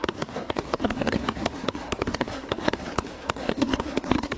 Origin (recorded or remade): remade